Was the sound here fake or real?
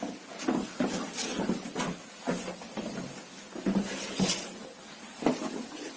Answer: real